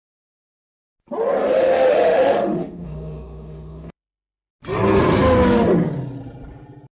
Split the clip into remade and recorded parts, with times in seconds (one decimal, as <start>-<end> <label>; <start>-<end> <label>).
0.0-1.5 recorded; 1.5-4.5 remade; 4.5-7.0 recorded